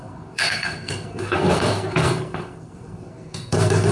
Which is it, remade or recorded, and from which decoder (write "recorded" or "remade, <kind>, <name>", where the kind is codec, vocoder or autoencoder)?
remade, codec, SNAC